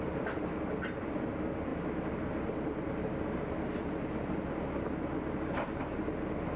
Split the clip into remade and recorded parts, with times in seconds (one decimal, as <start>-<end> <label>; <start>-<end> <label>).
0.0-6.6 recorded